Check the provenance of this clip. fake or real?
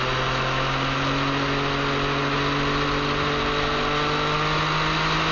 real